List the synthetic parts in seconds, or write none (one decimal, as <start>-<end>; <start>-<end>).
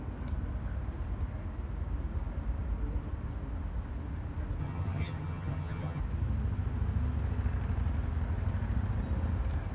4.6-6.0